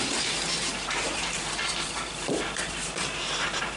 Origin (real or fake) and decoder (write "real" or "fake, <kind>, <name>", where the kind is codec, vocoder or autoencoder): fake, vocoder, BigVGAN v2